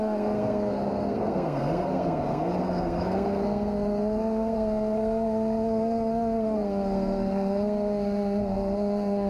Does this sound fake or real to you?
fake